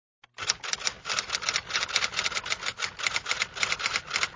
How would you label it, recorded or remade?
recorded